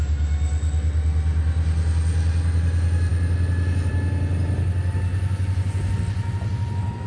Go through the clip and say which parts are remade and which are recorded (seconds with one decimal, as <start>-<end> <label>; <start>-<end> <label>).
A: 0.0-5.1 recorded; 5.1-5.9 remade; 5.9-7.1 recorded